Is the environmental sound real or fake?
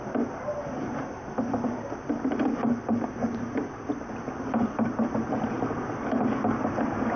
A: real